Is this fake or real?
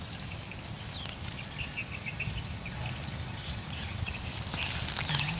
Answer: real